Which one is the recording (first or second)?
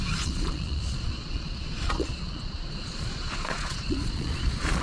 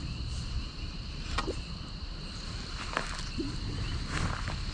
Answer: second